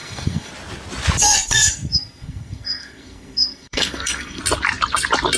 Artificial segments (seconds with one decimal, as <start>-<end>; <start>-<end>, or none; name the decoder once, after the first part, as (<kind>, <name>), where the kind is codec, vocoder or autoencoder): 0.0-0.5 (codec, SNAC); 1.2-4.4